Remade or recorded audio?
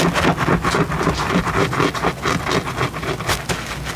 recorded